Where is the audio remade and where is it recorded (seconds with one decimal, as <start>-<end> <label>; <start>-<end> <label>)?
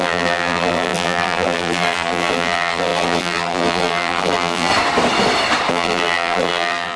0.0-4.7 remade; 4.7-5.7 recorded; 5.7-7.0 remade